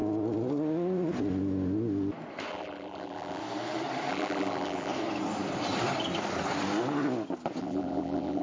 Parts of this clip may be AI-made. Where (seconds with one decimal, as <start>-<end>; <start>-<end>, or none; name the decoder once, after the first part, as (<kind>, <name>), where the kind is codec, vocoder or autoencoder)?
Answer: 2.5-3.4 (vocoder, BigVGAN v2); 4.1-4.9; 7.6-8.4